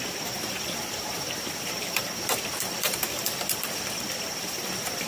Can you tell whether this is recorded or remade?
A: remade